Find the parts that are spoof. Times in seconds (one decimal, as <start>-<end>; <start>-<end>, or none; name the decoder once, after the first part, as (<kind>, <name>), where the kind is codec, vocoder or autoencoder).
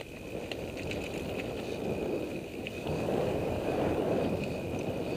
2.3-4.2 (codec, DAC)